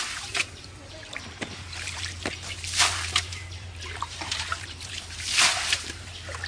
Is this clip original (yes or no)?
no